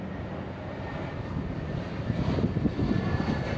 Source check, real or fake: real